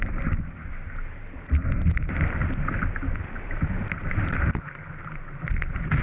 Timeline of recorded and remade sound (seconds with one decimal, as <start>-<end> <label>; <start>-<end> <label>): 0.0-2.4 recorded; 2.4-4.1 remade; 4.1-6.0 recorded